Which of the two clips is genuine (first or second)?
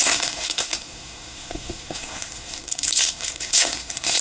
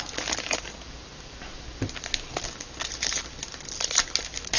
second